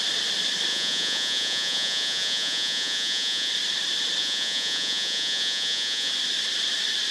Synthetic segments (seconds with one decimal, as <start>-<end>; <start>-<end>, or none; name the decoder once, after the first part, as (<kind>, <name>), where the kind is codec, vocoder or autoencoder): 0.7-3.5 (vocoder, Vocos); 4.2-6.1